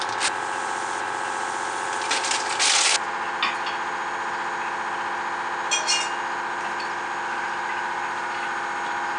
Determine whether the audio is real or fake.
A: real